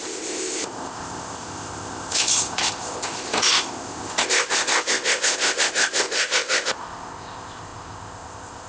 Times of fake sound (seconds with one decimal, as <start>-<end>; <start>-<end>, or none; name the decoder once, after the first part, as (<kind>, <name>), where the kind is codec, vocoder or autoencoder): 0.0-8.7 (codec, ZipCodec)

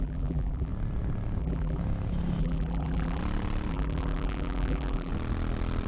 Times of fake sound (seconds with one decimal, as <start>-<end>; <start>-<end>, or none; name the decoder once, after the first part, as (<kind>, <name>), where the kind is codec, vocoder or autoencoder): 0.0-0.7 (vocoder, BigVGAN v2); 1.4-1.8; 2.4-3.2; 3.7-5.1

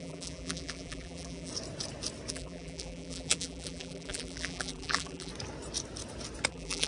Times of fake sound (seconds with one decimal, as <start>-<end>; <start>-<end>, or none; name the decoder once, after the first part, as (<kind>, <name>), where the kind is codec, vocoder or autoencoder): 0.0-1.5 (vocoder, BigVGAN v2); 2.3-5.3; 6.5-6.9

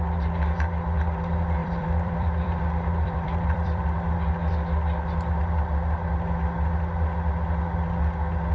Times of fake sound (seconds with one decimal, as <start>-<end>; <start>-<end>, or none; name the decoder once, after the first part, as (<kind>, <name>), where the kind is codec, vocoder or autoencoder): 1.6-4.5 (vocoder, BigVGAN v2)

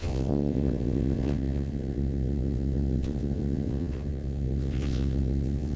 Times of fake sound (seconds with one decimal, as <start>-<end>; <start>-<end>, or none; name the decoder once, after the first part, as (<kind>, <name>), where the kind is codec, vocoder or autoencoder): 0.0-5.8 (vocoder, WaveNeXt)

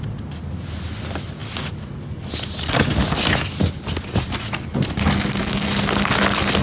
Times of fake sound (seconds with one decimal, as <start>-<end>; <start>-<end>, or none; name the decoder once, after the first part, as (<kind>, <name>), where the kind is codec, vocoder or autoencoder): none